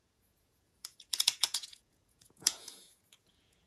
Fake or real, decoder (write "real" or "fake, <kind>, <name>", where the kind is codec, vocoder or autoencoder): fake, vocoder, Vocos